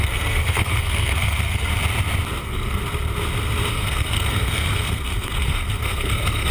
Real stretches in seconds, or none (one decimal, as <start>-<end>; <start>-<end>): 1.7-2.4; 2.8-3.7